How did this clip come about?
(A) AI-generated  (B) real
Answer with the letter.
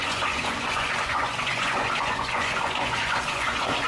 A